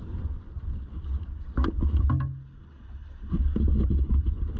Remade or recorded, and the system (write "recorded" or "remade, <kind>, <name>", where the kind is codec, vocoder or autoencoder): recorded